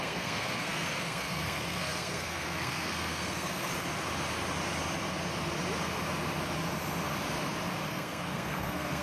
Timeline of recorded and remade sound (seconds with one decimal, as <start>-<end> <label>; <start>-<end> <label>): 0.0-3.7 remade; 3.7-7.9 recorded; 7.9-9.0 remade

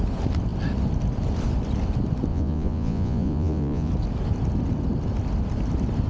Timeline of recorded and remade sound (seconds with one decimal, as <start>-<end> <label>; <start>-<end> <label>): 0.0-2.3 recorded; 2.3-3.9 remade; 3.9-6.1 recorded

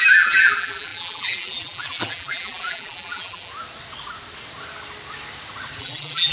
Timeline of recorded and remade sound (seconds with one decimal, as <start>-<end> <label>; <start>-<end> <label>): 0.0-3.5 remade; 3.5-5.8 recorded; 5.8-6.3 remade

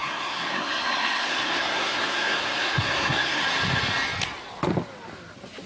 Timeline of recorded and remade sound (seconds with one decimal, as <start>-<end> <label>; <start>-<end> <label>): 0.0-3.4 remade; 3.4-5.7 recorded